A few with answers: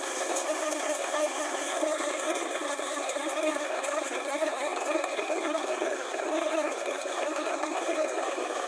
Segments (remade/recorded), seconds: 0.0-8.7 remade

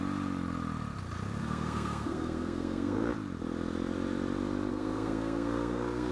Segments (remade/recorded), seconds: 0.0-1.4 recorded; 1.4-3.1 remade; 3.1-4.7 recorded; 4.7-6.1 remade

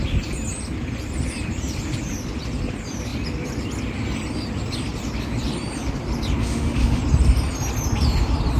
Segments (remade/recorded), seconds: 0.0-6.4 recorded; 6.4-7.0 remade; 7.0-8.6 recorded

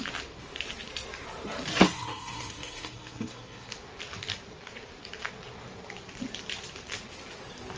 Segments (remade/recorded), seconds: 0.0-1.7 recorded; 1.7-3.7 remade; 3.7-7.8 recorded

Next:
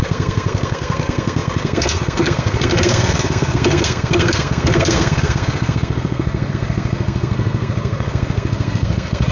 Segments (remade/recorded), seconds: 0.0-9.3 remade